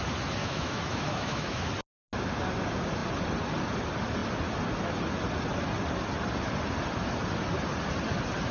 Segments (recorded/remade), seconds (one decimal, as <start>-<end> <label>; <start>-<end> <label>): 0.0-0.4 recorded; 0.4-1.7 remade; 1.7-8.5 recorded